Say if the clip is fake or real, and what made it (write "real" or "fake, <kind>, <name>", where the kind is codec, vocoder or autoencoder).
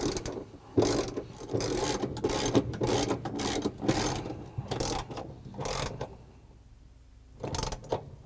real